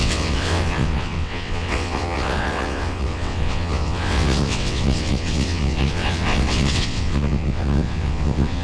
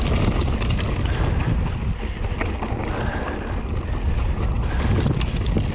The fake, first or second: first